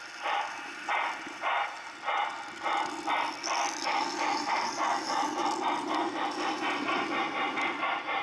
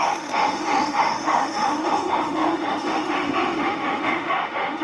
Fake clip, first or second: second